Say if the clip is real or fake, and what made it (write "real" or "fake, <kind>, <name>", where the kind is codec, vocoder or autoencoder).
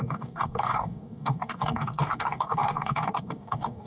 fake, codec, DAC